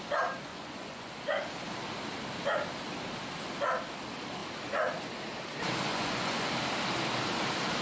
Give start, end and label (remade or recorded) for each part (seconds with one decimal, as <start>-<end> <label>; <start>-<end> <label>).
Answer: 0.0-0.5 recorded; 0.5-1.1 remade; 1.1-5.9 recorded; 5.9-6.5 remade; 6.5-7.8 recorded